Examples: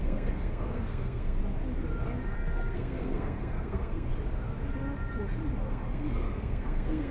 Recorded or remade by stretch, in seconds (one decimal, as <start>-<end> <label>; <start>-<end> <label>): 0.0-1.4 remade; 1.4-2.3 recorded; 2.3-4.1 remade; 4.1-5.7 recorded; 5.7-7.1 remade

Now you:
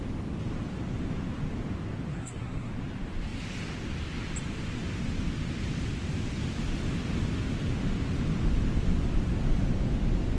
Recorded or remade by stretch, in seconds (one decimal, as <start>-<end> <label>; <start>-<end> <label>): 0.0-2.1 recorded; 2.1-2.7 remade; 2.7-10.4 recorded

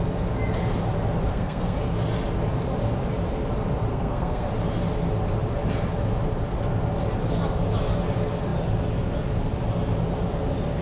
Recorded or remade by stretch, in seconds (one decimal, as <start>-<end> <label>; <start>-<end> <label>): 0.0-1.3 recorded; 1.3-1.8 remade; 1.8-3.9 recorded; 3.9-4.5 remade; 4.5-10.8 recorded

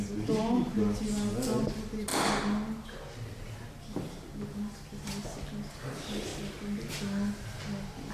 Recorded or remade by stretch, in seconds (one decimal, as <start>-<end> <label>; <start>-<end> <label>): 0.0-8.1 recorded